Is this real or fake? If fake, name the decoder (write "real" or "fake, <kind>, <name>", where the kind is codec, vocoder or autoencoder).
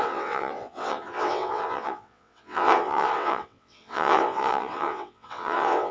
fake, vocoder, WaveNeXt